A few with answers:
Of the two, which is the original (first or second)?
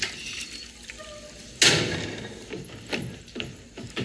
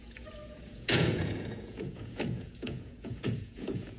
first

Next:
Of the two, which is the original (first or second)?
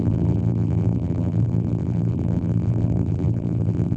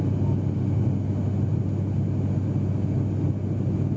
second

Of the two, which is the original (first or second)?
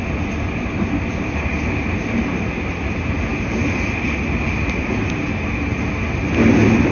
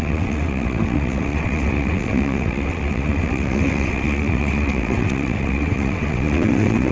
first